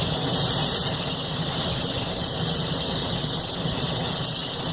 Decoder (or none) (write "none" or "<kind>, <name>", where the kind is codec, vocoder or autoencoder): vocoder, BigVGAN v2